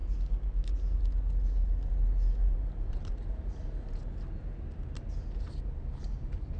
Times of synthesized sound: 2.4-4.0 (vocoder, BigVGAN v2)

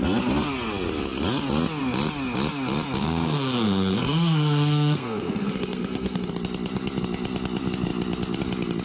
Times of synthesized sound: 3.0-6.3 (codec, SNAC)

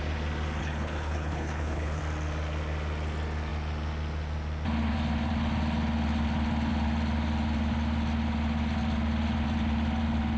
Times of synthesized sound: 0.6-2.0 (codec, HILCodec)